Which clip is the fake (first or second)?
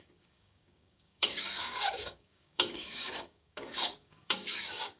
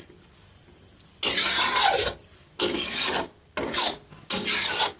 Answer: first